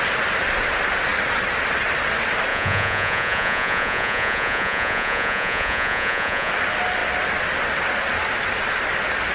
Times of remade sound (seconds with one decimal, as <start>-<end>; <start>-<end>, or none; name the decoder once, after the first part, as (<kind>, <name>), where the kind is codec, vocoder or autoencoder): 2.5-6.5 (vocoder, Vocos)